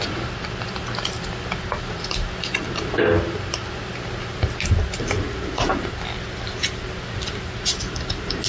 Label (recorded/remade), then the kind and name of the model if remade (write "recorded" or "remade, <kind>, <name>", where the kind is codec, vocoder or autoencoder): recorded